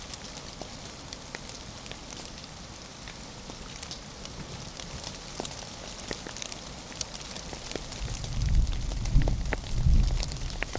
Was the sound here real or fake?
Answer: real